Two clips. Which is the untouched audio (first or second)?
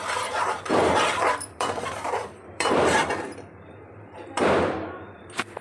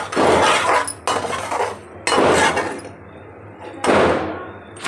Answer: second